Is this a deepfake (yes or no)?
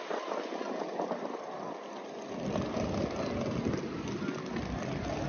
no